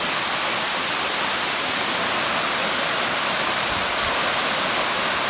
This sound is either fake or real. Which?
real